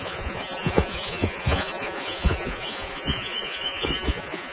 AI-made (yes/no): yes